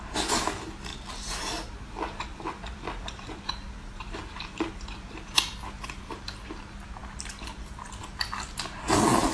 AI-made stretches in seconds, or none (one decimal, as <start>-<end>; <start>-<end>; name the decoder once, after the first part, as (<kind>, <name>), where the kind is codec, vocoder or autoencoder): 0.9-1.7 (vocoder, BigVGAN v2); 2.3-6.4